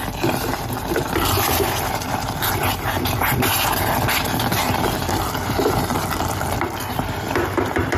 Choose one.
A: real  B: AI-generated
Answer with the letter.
B